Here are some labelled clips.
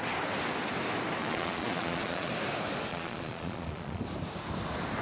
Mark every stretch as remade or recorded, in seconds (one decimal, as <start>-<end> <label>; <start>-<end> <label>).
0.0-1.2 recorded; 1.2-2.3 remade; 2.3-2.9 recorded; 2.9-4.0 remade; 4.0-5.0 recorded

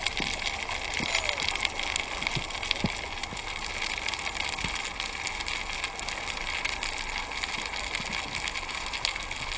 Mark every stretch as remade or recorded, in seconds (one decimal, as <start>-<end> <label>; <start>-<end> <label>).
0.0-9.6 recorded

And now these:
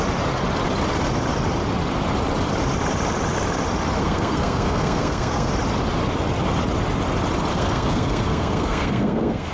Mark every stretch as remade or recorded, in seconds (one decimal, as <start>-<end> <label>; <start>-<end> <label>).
0.0-4.0 recorded; 4.0-5.5 remade; 5.5-7.5 recorded; 7.5-9.5 remade

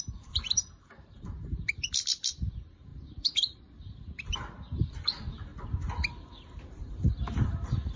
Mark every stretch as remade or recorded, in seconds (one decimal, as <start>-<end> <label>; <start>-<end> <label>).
0.0-5.5 remade; 5.5-6.6 recorded; 6.6-8.0 remade